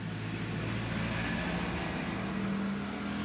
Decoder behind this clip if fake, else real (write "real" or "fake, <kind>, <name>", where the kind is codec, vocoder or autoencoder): real